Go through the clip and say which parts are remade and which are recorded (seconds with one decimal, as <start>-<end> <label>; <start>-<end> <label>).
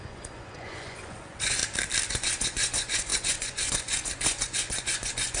0.0-1.6 remade; 1.6-2.1 recorded; 2.1-5.4 remade